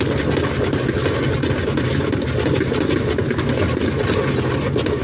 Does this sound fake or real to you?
real